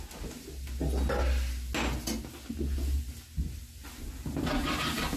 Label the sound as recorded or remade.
recorded